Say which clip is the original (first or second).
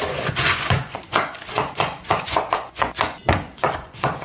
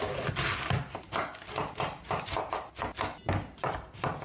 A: second